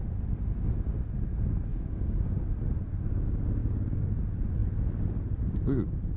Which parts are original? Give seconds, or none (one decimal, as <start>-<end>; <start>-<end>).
0.0-1.7; 2.4-3.6; 4.1-6.2